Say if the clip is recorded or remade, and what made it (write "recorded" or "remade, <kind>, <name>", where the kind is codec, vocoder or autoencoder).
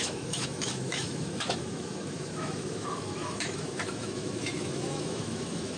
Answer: remade, autoencoder, DAC-VAE